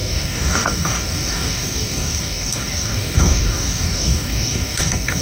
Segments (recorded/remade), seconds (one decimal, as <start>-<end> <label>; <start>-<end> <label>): 0.0-5.2 remade